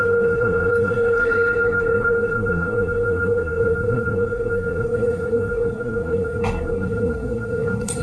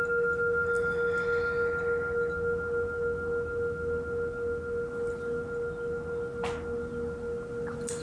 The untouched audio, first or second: second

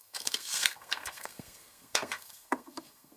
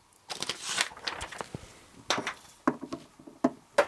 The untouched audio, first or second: second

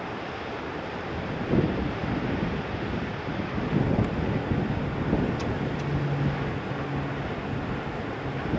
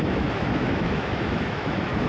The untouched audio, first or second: first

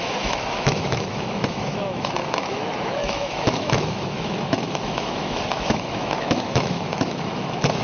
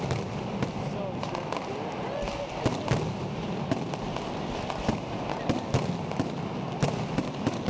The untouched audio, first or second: second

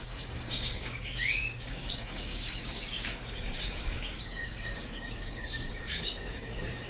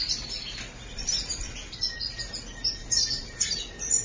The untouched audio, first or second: second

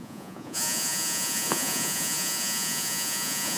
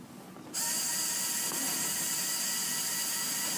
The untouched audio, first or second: second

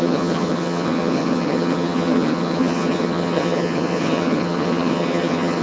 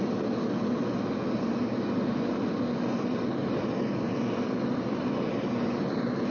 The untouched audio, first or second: second